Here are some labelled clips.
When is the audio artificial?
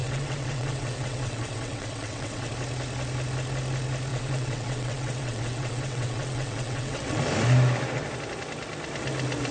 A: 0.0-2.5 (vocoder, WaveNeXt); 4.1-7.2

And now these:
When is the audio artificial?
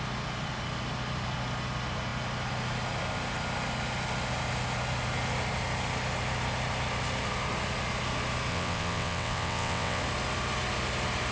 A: 8.5-10.0 (vocoder, WaveNeXt)